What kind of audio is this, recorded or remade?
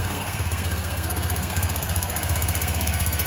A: remade